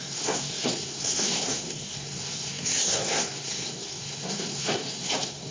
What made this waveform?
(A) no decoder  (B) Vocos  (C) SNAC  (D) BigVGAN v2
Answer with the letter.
C